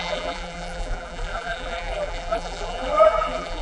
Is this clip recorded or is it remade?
remade